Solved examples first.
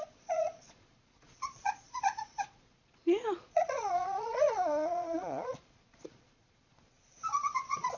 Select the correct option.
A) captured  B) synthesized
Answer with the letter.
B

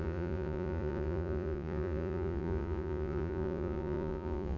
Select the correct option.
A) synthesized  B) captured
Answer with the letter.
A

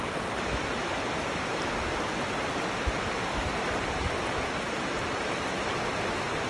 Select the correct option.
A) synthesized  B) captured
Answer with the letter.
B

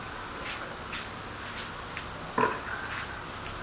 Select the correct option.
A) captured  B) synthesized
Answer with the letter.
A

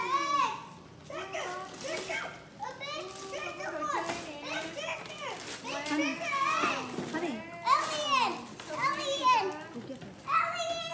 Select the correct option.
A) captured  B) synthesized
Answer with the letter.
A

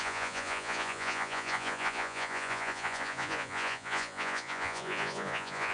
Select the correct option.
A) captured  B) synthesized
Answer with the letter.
B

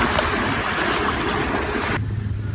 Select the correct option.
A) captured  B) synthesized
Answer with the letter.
A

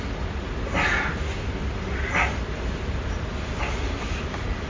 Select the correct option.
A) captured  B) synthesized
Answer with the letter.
A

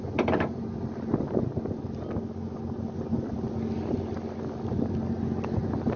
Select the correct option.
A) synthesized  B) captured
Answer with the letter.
B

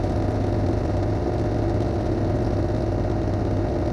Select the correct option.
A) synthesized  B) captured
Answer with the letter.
B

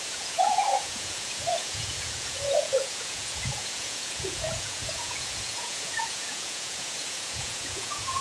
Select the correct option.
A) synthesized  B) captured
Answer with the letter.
A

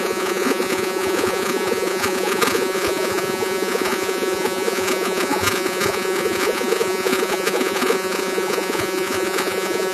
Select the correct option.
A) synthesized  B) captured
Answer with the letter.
A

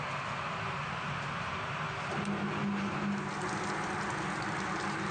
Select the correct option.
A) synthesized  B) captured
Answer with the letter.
B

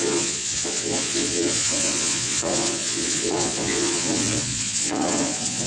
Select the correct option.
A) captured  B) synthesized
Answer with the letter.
B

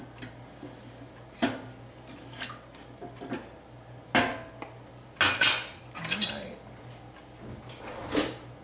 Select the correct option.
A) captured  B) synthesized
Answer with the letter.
A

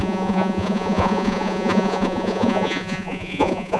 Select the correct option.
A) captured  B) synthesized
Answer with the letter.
B